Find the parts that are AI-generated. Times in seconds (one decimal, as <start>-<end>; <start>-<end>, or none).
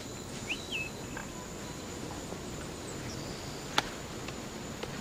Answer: none